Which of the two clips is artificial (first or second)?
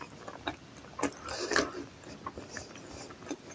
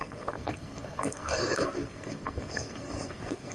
second